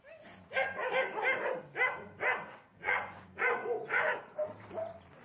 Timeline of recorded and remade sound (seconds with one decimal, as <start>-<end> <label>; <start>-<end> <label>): 0.0-2.7 recorded; 2.7-3.2 remade; 3.2-3.6 recorded; 3.6-4.2 remade; 4.2-5.2 recorded